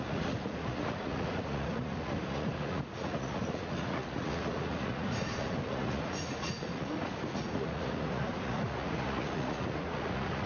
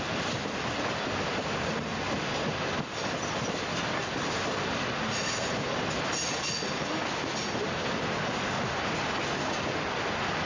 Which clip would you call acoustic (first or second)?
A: second